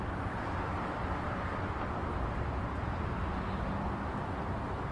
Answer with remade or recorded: recorded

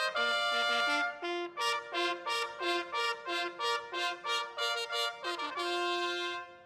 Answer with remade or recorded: recorded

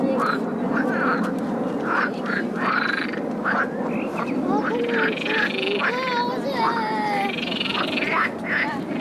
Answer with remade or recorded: recorded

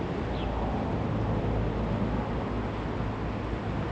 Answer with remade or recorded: recorded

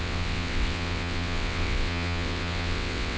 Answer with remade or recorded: remade